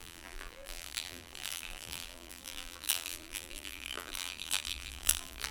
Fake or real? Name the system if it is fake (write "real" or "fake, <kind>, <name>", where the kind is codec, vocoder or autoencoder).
fake, vocoder, BigVGAN v2